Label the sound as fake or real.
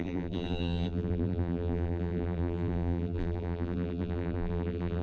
fake